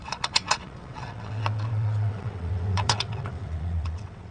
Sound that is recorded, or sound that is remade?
remade